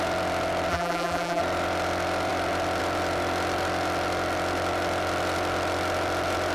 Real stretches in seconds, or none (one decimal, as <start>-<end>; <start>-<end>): 0.0-0.7; 1.4-6.5